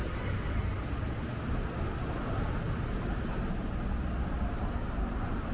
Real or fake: real